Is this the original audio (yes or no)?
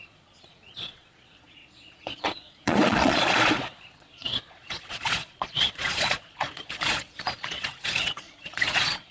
no